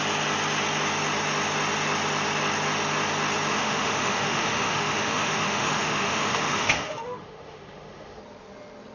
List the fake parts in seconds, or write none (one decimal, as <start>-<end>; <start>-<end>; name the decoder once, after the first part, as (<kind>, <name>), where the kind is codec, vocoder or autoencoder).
3.5-8.2 (autoencoder, DAC-VAE)